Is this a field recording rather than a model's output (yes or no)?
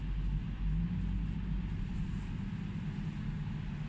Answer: yes